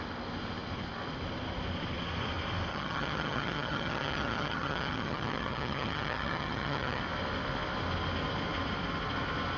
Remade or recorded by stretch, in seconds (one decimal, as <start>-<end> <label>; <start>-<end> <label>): 0.0-2.7 recorded; 2.7-7.0 remade; 7.0-9.6 recorded

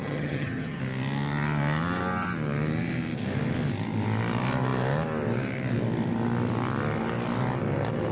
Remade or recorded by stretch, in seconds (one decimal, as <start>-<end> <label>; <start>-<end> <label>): 0.0-0.8 remade; 0.8-8.1 recorded

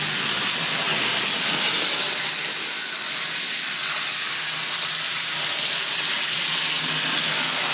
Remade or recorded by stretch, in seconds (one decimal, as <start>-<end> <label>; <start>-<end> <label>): 0.0-7.7 recorded

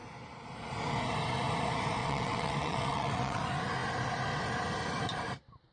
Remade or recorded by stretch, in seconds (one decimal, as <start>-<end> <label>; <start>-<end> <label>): 0.0-2.0 recorded; 2.0-3.4 remade; 3.4-5.7 recorded

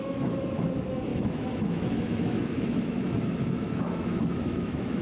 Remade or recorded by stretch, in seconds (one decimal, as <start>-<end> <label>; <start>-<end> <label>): 0.0-5.0 remade

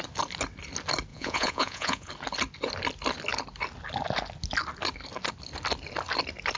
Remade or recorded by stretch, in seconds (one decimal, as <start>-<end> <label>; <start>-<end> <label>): 0.0-1.1 recorded; 1.1-2.1 remade; 2.1-6.6 recorded

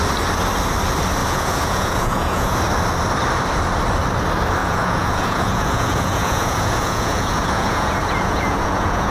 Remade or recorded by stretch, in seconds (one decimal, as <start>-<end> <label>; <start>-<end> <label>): 0.0-1.2 recorded; 1.2-2.6 remade; 2.6-4.6 recorded; 4.6-9.1 remade